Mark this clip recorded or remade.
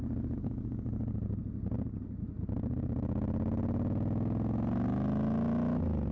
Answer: recorded